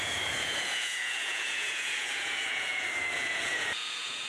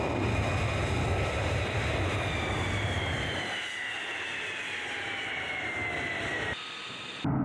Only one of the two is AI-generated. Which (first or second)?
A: first